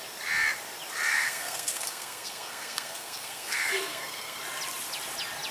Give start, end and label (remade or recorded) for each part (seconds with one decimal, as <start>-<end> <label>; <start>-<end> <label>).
0.0-1.1 recorded; 1.1-4.4 remade; 4.4-5.5 recorded